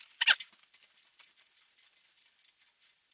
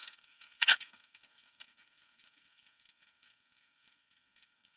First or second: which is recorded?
first